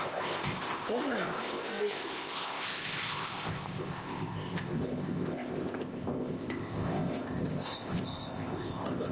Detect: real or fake fake